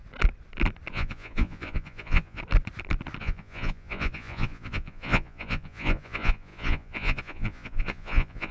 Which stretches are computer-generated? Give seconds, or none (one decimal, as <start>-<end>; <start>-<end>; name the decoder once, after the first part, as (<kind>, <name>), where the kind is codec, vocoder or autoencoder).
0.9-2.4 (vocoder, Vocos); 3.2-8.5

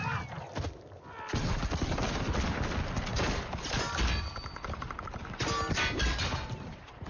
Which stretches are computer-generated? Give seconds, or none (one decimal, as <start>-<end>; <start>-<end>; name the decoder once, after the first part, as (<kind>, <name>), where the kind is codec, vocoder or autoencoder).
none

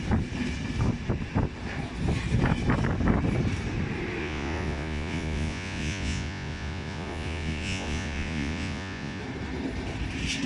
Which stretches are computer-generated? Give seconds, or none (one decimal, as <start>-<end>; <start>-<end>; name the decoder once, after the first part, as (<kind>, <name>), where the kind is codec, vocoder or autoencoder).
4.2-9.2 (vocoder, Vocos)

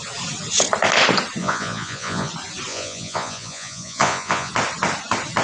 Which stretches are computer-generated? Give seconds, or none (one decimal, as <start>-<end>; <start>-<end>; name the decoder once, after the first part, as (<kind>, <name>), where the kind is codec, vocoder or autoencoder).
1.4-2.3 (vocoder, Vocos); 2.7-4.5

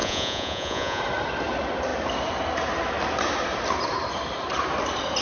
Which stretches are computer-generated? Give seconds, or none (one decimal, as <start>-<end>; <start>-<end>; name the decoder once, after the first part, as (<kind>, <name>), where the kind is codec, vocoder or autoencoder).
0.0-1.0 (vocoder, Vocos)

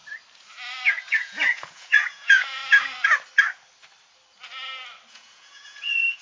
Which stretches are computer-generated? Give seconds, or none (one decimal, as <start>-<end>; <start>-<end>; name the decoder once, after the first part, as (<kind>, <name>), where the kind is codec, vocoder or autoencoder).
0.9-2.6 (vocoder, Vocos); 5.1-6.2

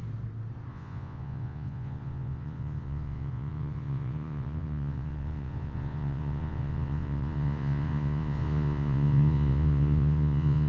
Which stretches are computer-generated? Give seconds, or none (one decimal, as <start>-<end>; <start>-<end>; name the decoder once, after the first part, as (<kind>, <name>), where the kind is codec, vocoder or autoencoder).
0.7-10.7 (vocoder, Vocos)

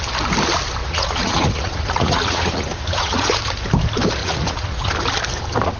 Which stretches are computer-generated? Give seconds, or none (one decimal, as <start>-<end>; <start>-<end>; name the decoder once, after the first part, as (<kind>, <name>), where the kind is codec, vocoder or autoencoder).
0.8-3.4 (vocoder, Vocos); 4.2-4.9